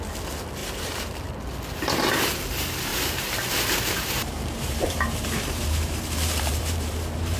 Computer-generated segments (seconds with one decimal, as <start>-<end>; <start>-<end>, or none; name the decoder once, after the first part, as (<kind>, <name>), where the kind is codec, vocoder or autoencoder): 0.6-1.3 (vocoder, BigVGAN v2); 2.9-7.4